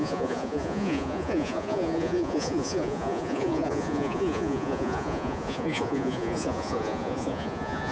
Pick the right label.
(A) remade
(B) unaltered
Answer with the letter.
A